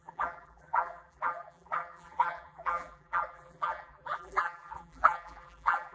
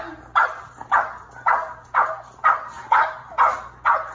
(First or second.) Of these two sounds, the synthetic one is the first